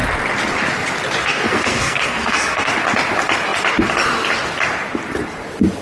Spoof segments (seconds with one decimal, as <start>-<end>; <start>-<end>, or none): 1.2-2.7